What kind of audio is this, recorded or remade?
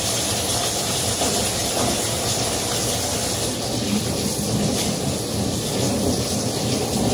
recorded